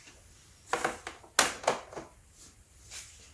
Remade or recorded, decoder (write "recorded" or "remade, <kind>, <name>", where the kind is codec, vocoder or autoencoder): recorded